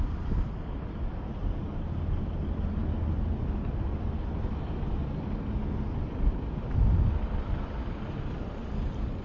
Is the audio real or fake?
real